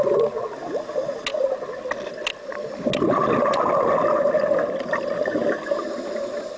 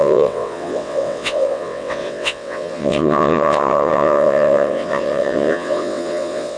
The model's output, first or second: second